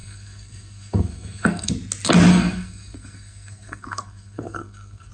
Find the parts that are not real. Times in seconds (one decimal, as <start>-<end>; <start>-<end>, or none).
0.0-1.7; 2.3-5.1